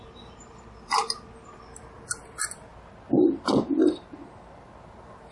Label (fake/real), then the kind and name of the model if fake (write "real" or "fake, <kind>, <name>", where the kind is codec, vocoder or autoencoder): real